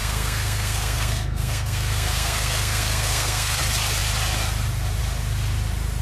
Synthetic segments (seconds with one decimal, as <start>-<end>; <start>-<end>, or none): 0.0-3.6